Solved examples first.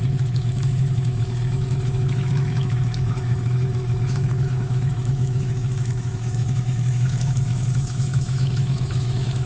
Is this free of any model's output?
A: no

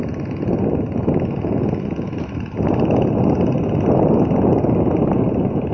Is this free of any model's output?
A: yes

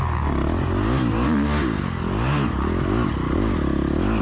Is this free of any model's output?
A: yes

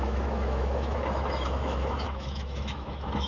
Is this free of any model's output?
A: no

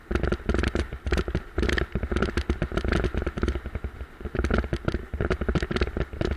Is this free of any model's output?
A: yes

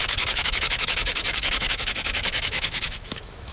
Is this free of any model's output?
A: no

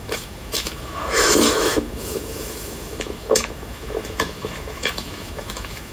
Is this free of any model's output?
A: no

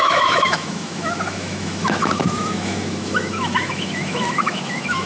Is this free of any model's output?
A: no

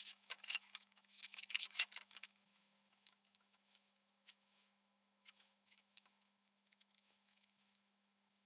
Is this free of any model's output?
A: no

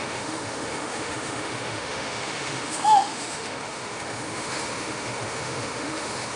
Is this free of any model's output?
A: no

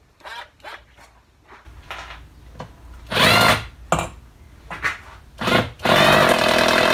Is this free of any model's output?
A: yes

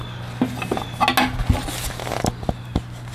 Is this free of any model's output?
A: yes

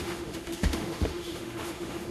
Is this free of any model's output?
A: no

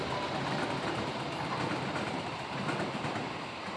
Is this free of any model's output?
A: yes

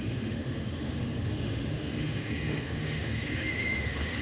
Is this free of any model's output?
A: no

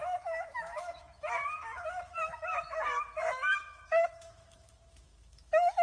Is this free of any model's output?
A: no